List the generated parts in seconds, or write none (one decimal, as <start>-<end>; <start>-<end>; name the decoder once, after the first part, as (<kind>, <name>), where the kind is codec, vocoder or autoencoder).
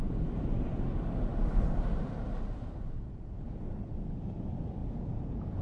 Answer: 4.8-5.6 (vocoder, Vocos)